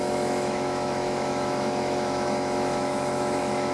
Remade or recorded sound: remade